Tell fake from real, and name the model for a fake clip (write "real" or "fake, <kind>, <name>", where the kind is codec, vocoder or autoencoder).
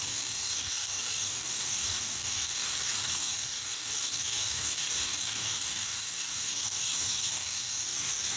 fake, codec, DAC